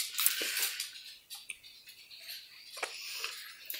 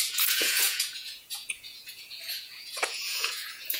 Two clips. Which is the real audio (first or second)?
first